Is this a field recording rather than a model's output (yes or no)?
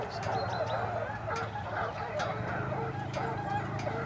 yes